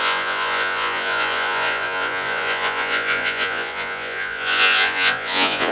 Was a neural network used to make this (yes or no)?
yes